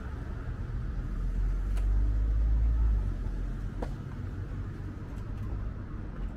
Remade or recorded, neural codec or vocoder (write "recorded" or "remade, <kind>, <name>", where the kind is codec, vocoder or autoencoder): recorded